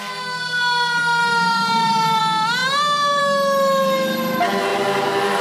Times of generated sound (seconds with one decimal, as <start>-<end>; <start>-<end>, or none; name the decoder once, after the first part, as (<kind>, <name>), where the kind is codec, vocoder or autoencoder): 1.2-2.2 (vocoder, BigVGAN v2); 2.6-3.2; 4.7-5.4